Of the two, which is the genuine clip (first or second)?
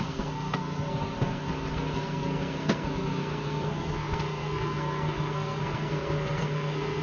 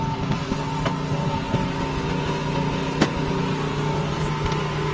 second